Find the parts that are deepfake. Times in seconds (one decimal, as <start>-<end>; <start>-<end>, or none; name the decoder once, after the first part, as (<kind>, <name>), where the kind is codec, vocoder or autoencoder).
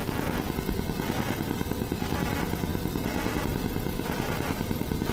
3.9-5.1 (vocoder, BigVGAN v2)